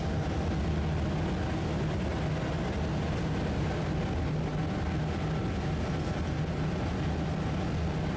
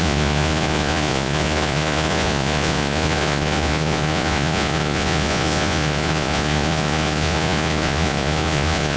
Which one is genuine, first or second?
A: first